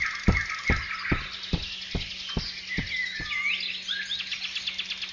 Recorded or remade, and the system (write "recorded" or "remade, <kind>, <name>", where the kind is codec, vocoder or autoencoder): recorded